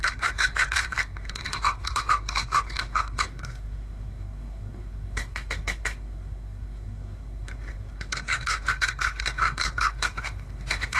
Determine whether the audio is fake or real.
fake